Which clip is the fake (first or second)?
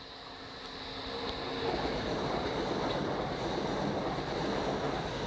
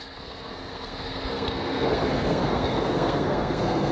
second